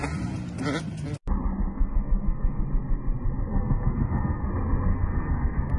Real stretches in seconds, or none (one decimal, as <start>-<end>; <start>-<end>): 0.0-1.7; 2.6-3.5; 4.5-4.9